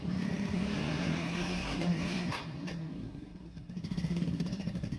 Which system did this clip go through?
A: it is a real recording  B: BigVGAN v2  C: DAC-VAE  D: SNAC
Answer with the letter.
D